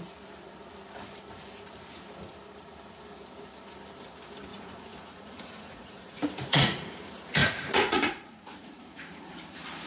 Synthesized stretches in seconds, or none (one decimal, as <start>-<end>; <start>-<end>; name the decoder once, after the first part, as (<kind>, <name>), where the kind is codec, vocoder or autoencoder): 4.5-7.0 (vocoder, Vocos); 7.4-9.3